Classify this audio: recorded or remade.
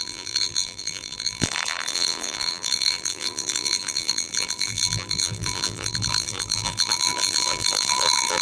remade